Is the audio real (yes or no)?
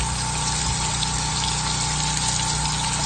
yes